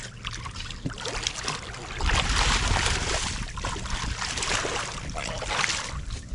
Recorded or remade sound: recorded